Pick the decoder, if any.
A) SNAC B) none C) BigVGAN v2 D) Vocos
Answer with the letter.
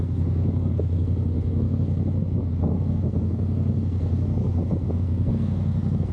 A